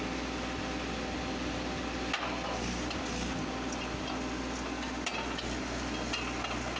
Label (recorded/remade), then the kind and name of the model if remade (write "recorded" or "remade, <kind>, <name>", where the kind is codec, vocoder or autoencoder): recorded